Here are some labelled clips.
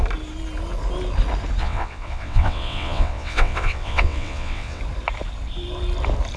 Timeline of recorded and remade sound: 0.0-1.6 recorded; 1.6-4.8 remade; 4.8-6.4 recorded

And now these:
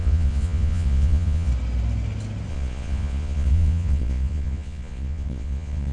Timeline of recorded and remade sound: 0.0-1.5 remade; 1.5-2.5 recorded; 2.5-5.9 remade

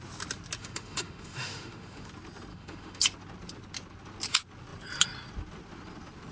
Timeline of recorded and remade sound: 0.0-0.6 recorded; 0.6-2.1 remade; 2.1-2.5 recorded; 2.5-3.0 remade; 3.0-6.3 recorded